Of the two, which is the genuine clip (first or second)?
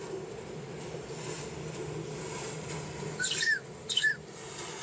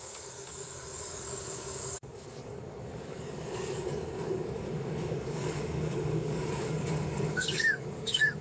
first